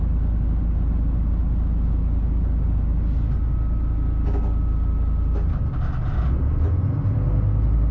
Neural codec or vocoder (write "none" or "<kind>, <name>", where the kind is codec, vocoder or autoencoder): none